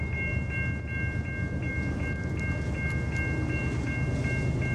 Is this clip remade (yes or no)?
no